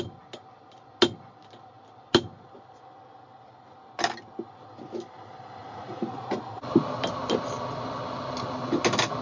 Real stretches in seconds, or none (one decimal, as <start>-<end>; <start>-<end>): 0.0-5.6; 6.4-9.2